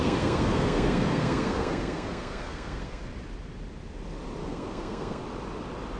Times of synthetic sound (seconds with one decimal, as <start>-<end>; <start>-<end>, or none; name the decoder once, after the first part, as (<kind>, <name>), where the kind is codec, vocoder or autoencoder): 0.0-3.0 (codec, SNAC); 4.4-5.2